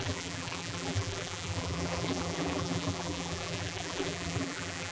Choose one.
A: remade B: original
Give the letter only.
A